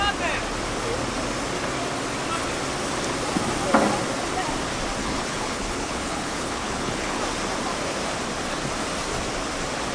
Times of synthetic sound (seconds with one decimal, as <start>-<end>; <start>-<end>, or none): 5.0-7.2